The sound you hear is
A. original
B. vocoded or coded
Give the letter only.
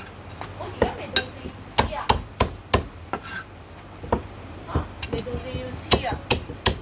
A